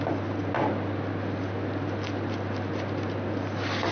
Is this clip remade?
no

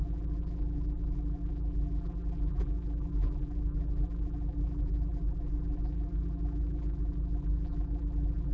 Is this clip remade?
yes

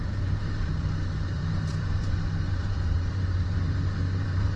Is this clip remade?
yes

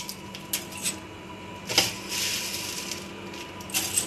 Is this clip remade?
no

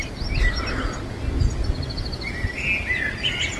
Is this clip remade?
no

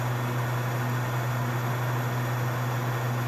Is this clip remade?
no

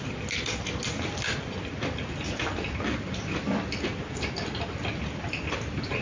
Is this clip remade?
no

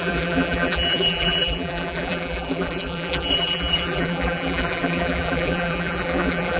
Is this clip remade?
yes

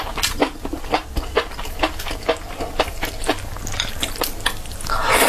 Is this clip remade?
no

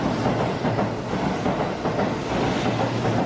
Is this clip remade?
no